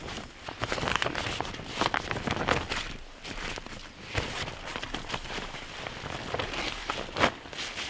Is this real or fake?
real